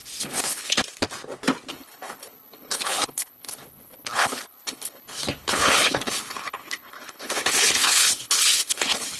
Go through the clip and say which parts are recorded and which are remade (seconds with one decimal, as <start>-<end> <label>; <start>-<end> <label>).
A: 0.0-0.8 remade; 0.8-1.7 recorded; 1.7-9.2 remade